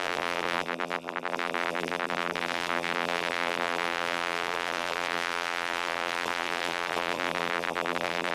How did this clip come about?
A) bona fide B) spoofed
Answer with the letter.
B